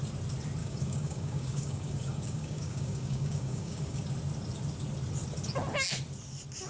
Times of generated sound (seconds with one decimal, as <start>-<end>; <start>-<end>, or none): 0.6-4.0